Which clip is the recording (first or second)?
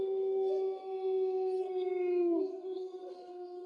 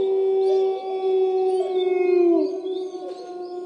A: second